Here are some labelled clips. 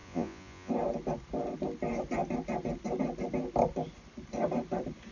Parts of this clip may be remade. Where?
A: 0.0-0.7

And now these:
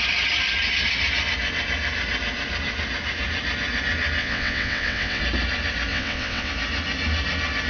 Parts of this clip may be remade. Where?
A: 4.2-5.2; 5.9-6.5

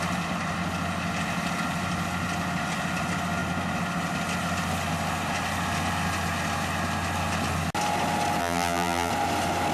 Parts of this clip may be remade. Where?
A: 8.4-9.1

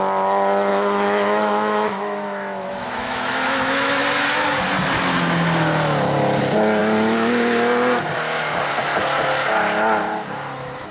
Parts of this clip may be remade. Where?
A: 0.7-4.0

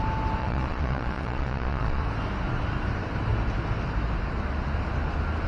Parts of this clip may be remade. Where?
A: 0.4-2.0

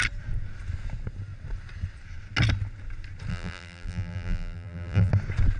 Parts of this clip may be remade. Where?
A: 3.3-5.1

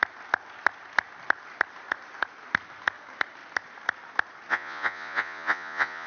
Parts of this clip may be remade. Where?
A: 4.5-6.1

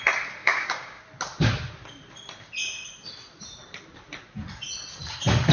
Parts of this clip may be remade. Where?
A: 0.4-1.0